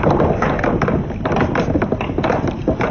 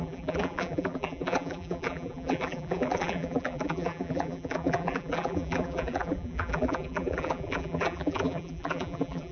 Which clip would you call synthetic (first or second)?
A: second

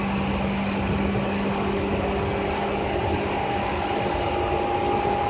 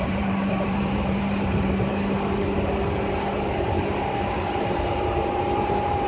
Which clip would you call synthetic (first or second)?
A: second